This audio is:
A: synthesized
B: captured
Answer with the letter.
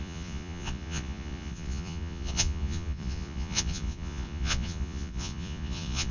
A